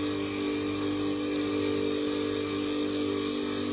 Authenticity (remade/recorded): recorded